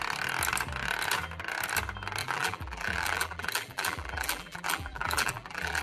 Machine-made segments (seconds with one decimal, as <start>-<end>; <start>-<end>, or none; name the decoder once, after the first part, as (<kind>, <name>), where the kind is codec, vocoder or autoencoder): 2.2-5.8 (vocoder, BigVGAN v2)